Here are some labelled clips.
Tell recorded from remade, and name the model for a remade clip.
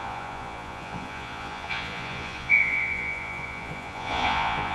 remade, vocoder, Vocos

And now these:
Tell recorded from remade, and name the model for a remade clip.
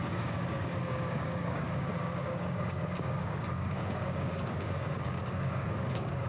remade, codec, DAC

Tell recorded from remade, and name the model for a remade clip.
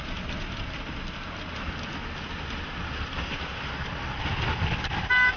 recorded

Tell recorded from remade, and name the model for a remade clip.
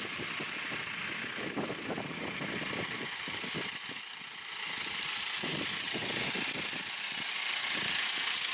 recorded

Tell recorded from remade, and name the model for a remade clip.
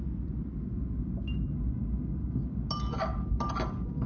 recorded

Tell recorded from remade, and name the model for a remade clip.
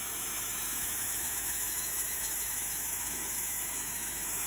remade, autoencoder, DAC-VAE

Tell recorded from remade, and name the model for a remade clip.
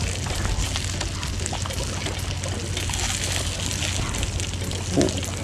recorded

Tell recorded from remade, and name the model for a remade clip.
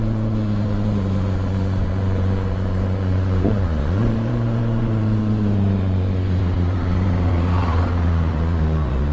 remade, vocoder, Vocos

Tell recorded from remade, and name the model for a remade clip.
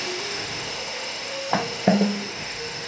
remade, autoencoder, DAC-VAE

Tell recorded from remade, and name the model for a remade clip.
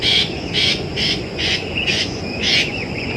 remade, vocoder, Vocos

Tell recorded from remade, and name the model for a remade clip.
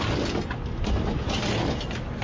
recorded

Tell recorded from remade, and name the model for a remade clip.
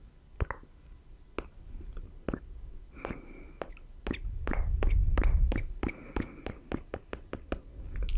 recorded